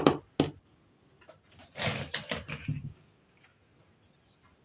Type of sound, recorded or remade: recorded